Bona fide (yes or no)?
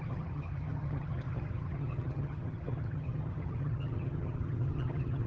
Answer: no